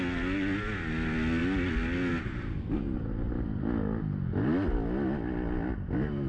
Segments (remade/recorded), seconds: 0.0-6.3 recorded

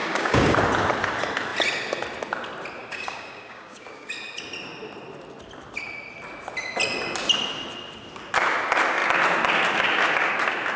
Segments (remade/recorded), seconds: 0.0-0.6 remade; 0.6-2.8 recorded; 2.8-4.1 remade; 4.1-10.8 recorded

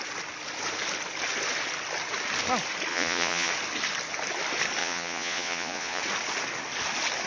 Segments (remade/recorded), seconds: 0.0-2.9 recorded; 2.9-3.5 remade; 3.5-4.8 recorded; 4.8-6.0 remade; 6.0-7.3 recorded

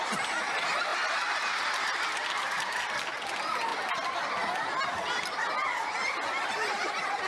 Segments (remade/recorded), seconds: 0.0-7.3 recorded

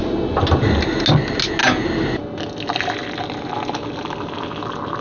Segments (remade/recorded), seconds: 0.0-5.0 recorded

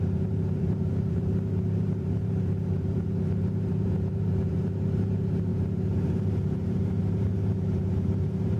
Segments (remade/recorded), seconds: 0.0-8.6 remade